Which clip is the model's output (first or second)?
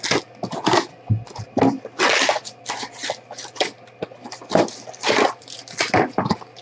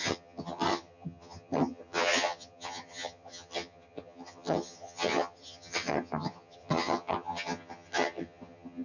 second